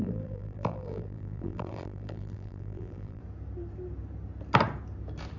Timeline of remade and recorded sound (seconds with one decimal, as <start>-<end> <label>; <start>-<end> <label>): 0.0-3.2 remade; 3.2-5.4 recorded